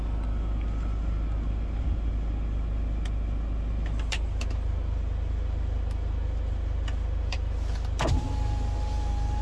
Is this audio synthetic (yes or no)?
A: no